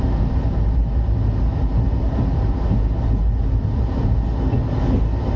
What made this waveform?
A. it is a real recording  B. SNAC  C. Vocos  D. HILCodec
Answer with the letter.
A